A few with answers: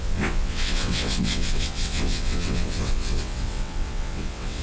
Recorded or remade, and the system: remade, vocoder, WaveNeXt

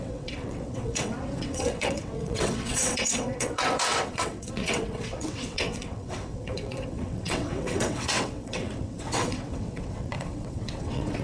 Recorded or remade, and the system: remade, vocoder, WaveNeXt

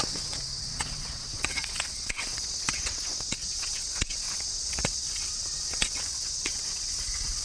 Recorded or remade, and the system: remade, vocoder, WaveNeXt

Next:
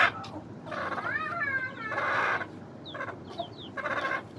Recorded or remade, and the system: recorded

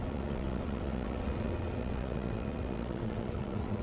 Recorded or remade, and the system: remade, vocoder, WaveNeXt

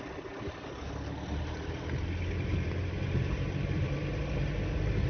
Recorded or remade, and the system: recorded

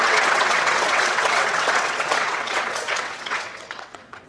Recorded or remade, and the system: remade, vocoder, WaveNeXt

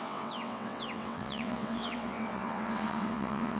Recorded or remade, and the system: remade, vocoder, WaveNeXt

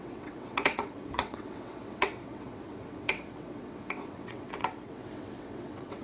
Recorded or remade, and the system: remade, vocoder, WaveNeXt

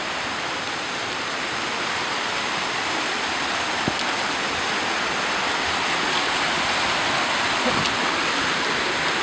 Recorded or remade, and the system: recorded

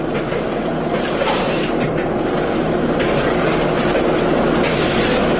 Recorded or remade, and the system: recorded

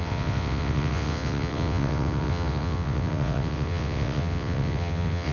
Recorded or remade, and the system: remade, vocoder, WaveNeXt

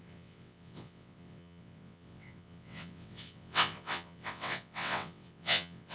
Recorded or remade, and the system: remade, vocoder, WaveNeXt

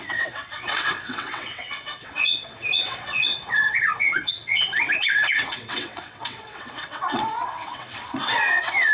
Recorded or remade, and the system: remade, vocoder, WaveNeXt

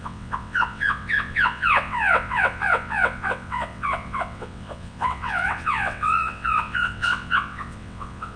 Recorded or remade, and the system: remade, vocoder, WaveNeXt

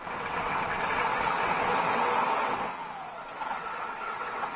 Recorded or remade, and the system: remade, vocoder, WaveNeXt